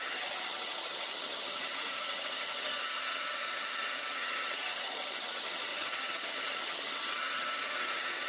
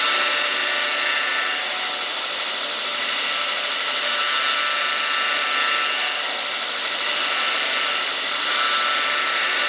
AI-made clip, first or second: first